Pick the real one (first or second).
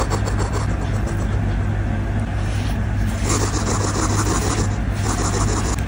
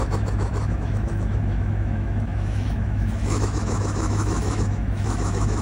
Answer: first